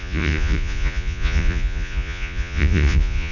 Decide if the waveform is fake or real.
fake